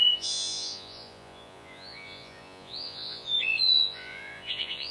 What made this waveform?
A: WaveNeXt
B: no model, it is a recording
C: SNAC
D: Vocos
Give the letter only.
D